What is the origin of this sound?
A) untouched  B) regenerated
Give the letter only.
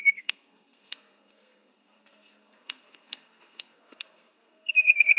B